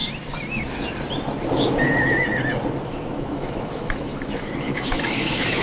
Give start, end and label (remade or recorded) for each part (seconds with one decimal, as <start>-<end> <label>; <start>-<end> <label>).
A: 0.0-2.9 recorded; 2.9-5.6 remade